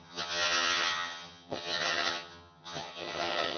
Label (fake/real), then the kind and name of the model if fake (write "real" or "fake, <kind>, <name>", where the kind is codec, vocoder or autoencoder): fake, vocoder, HiFi-GAN